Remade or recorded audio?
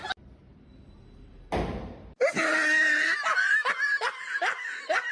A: recorded